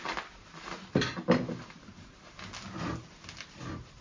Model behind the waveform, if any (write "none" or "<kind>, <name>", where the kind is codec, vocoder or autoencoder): none